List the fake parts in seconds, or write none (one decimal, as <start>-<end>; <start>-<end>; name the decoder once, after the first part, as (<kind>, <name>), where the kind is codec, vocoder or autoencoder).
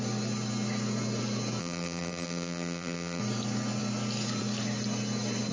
1.6-3.2 (vocoder, BigVGAN v2)